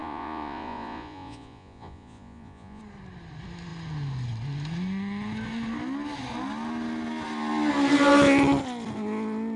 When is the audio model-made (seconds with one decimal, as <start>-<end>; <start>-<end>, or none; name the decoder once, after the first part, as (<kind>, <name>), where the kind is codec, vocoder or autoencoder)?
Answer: 0.0-2.8 (vocoder, Vocos)